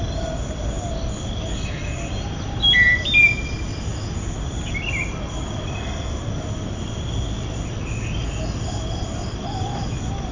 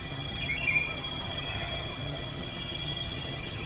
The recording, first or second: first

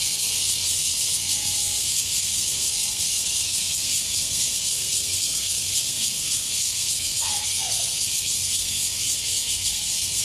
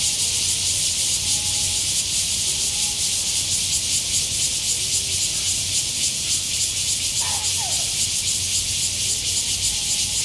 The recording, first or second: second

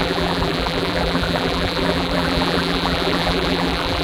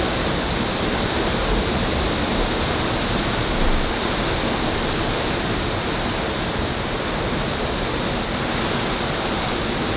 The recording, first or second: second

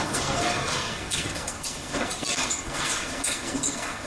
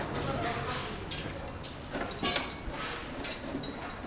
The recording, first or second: second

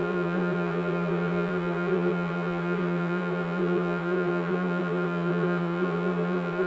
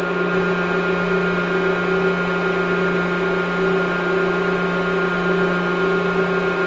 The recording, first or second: second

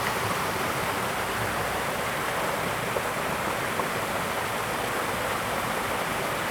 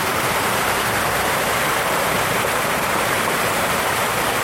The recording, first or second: first